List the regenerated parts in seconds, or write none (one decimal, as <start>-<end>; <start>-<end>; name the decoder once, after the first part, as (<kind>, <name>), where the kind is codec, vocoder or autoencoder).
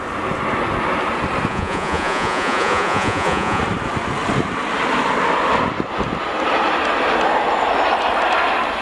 1.5-3.6 (vocoder, Vocos)